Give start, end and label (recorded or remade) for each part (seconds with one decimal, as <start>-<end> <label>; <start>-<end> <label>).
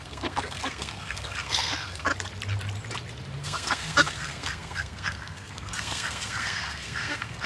0.0-2.1 remade; 2.1-3.4 recorded; 3.4-7.5 remade